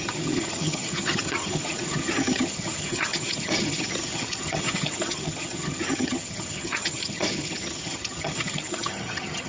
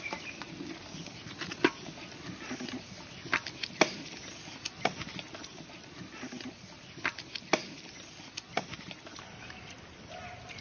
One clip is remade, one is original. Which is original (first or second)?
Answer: second